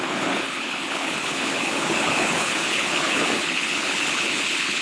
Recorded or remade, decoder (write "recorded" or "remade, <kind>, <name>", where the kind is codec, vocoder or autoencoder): remade, codec, HILCodec